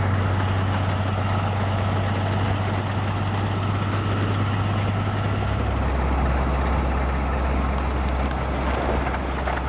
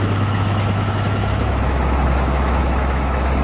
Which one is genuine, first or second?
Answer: first